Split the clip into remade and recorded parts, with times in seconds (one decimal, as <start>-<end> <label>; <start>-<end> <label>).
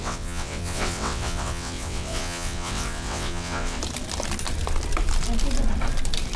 0.0-3.8 remade; 3.8-6.4 recorded